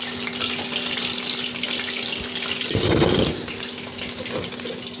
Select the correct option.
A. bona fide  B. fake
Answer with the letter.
A